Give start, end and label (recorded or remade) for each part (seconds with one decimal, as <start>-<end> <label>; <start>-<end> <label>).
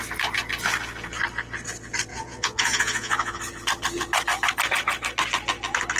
0.0-2.1 recorded; 2.1-3.4 remade; 3.4-6.0 recorded